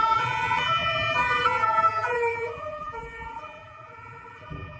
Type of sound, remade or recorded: remade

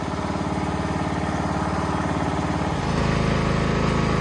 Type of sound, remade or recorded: recorded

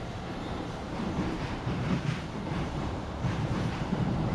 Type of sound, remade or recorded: remade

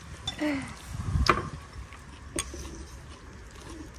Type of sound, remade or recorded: recorded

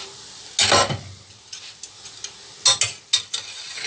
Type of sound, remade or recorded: recorded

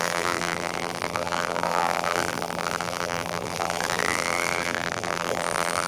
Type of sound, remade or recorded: remade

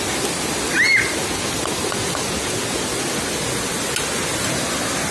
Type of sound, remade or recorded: recorded